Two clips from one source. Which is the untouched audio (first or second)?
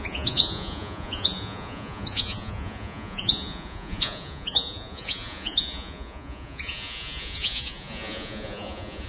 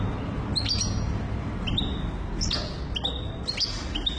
second